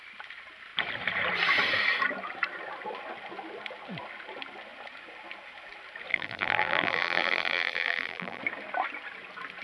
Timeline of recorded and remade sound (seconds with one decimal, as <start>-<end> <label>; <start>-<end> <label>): 0.0-6.1 recorded; 6.1-8.4 remade; 8.4-9.6 recorded

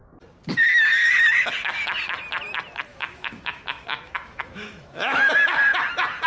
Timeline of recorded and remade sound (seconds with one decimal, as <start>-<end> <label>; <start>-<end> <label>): 0.0-2.9 recorded; 2.9-5.3 remade; 5.3-6.3 recorded

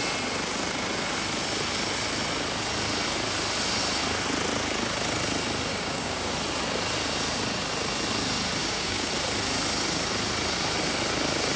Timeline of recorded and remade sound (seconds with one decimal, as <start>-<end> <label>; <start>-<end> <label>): 0.0-5.7 recorded; 5.7-6.3 remade; 6.3-8.6 recorded; 8.6-9.1 remade; 9.1-11.6 recorded

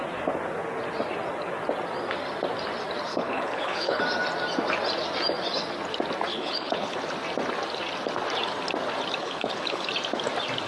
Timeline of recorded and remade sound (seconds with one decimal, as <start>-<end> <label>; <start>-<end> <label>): 0.0-3.1 recorded; 3.1-4.0 remade; 4.0-6.3 recorded; 6.3-7.0 remade; 7.0-9.2 recorded; 9.2-9.9 remade; 9.9-10.7 recorded

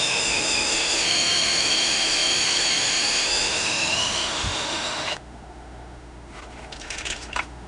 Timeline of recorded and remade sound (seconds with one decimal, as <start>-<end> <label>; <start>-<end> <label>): 0.0-7.7 remade

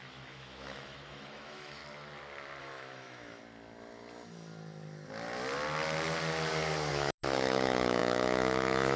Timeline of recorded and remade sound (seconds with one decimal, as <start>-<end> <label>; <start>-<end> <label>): 0.0-1.8 remade; 1.8-2.6 recorded; 2.6-3.4 remade; 3.4-6.9 recorded; 6.9-9.0 remade

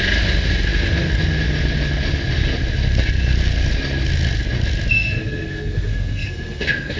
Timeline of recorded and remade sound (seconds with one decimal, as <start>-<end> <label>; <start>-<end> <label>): 0.0-4.9 recorded; 4.9-7.0 remade

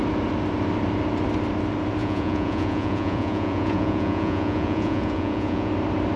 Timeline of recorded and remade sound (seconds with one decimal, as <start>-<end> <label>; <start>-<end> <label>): 0.0-2.0 recorded; 2.0-5.7 remade; 5.7-6.2 recorded